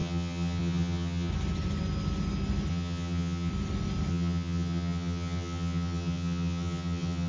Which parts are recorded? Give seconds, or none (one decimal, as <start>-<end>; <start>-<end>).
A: 1.3-2.7; 3.5-4.1